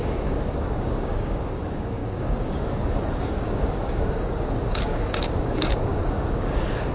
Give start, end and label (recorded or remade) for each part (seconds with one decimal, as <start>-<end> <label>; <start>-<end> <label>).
0.0-6.9 remade